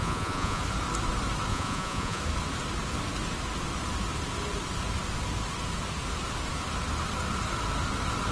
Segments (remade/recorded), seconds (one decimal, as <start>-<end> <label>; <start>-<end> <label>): 0.0-0.6 remade; 0.6-1.5 recorded; 1.5-2.2 remade; 2.2-8.3 recorded